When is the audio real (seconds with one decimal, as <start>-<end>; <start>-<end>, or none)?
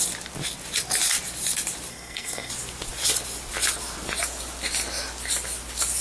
0.0-1.9; 2.5-6.0